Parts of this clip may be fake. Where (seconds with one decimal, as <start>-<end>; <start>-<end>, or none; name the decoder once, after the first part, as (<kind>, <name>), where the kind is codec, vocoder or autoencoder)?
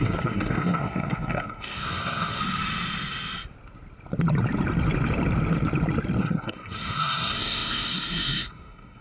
0.0-2.4 (codec, SNAC); 6.2-9.0